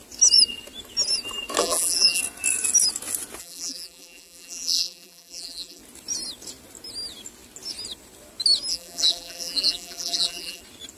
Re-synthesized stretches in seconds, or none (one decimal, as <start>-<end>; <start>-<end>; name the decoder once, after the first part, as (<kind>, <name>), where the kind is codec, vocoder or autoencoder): 1.6-2.2 (vocoder, BigVGAN v2); 3.4-5.8; 8.7-10.6